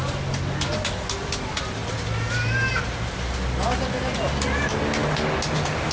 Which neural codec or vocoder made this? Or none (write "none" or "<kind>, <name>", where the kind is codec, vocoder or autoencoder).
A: none